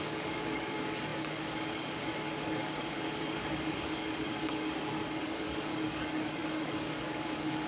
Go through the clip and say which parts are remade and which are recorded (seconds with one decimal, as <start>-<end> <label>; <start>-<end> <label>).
0.0-7.7 remade